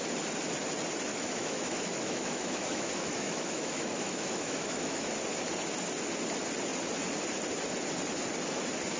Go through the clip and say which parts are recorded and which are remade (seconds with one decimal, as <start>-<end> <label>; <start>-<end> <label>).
0.0-1.1 recorded; 1.1-5.1 remade; 5.1-9.0 recorded